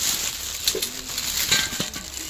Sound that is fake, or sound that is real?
real